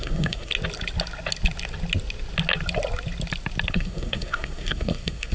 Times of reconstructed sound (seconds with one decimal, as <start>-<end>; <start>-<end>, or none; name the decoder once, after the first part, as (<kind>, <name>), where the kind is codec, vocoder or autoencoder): 0.0-0.5 (codec, SNAC); 3.7-5.3